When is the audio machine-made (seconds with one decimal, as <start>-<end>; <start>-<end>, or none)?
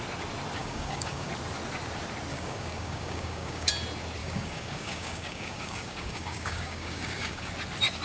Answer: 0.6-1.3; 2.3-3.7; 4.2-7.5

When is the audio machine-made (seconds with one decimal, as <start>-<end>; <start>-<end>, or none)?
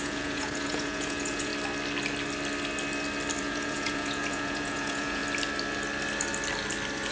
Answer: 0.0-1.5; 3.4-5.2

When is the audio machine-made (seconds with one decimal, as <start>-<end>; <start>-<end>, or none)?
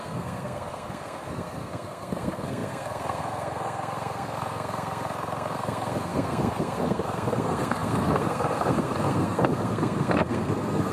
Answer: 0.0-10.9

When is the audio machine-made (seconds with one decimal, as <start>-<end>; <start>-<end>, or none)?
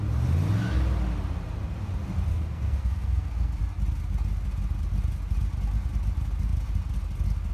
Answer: 2.3-3.6